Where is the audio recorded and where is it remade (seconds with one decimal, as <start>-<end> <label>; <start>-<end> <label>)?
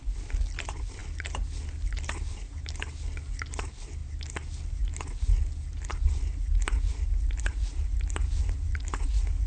0.0-9.5 recorded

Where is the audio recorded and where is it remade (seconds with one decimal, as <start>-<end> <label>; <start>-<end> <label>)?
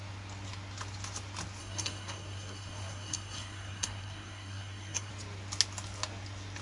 0.0-1.6 recorded; 1.6-5.1 remade; 5.1-6.6 recorded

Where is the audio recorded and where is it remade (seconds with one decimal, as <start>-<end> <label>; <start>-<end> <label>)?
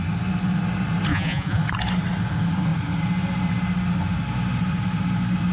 0.0-1.1 recorded; 1.1-1.6 remade; 1.6-5.5 recorded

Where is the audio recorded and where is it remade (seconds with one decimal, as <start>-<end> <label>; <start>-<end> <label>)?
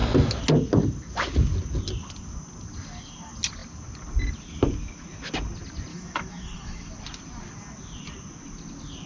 0.0-5.9 recorded; 5.9-6.9 remade; 6.9-9.1 recorded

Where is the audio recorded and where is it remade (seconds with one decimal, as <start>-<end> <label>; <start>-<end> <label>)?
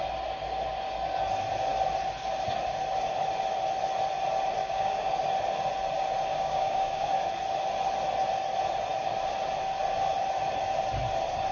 0.0-4.6 recorded; 4.6-5.1 remade; 5.1-6.3 recorded; 6.3-7.1 remade; 7.1-11.5 recorded